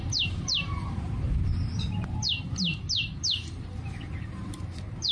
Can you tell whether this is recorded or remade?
remade